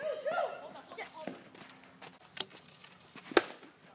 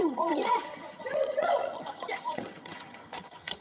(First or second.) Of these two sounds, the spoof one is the second